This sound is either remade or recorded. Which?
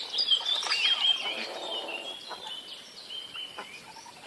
remade